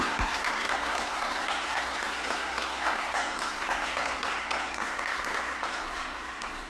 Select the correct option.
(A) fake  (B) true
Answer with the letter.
A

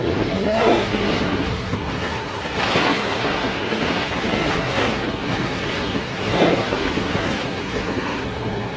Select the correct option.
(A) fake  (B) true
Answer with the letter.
A